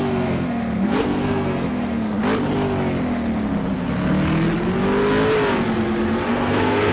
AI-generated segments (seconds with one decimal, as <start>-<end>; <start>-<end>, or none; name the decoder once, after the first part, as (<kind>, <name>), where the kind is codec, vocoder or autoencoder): 0.0-2.2 (codec, SNAC); 6.3-6.9